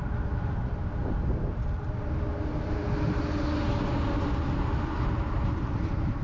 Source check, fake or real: real